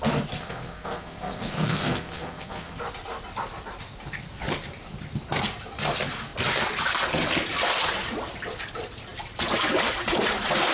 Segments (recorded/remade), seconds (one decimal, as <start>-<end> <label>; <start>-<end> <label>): 0.0-0.4 recorded; 0.4-2.8 remade; 2.8-10.7 recorded